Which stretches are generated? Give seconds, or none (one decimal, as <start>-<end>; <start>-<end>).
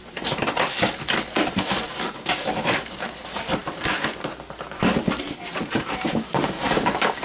none